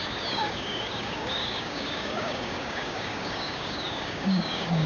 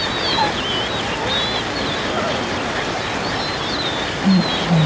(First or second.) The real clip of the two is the second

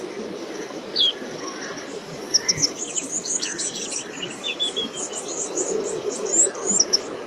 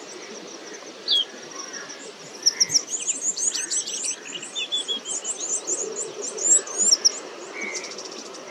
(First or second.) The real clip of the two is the second